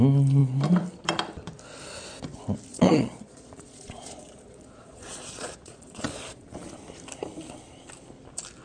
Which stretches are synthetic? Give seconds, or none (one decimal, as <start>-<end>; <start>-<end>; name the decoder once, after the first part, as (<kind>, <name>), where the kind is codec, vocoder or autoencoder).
2.7-6.7 (vocoder, Vocos)